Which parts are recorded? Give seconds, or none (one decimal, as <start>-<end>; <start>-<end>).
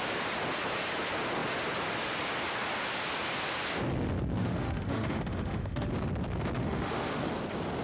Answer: 0.0-4.4; 5.9-6.6; 7.3-7.8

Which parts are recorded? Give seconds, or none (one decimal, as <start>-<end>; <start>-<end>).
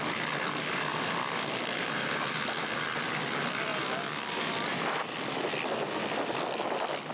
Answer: 0.0-7.1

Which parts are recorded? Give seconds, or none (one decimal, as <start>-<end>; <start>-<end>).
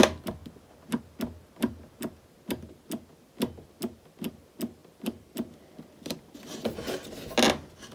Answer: 0.0-4.8; 6.3-7.9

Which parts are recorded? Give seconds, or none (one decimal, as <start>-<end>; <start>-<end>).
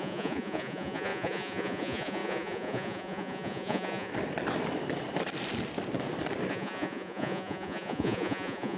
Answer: 4.1-6.5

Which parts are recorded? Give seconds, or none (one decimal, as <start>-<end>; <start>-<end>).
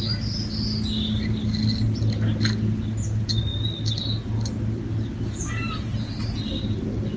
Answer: 0.0-7.2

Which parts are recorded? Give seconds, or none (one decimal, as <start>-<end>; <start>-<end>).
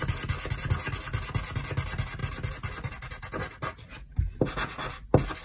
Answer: 0.0-5.4